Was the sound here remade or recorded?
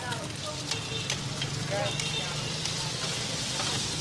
remade